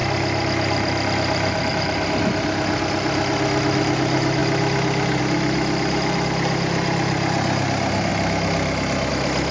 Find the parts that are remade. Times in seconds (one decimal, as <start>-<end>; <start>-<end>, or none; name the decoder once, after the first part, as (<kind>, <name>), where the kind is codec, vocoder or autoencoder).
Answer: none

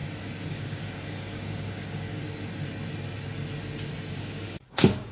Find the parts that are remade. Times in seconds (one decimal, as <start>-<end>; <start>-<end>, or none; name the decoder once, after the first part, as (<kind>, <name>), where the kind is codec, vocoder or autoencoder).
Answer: 0.5-2.2 (codec, DAC); 4.1-5.1

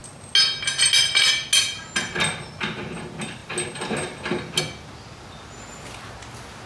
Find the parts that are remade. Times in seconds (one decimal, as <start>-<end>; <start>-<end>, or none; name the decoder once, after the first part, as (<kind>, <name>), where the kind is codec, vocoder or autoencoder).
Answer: none